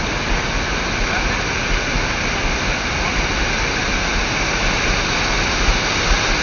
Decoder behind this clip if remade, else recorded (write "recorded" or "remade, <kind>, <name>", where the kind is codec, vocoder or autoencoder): recorded